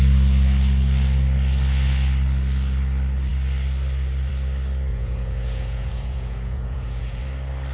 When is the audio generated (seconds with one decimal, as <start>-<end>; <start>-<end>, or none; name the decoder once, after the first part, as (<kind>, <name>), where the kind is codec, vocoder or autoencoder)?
4.9-7.2 (vocoder, Vocos)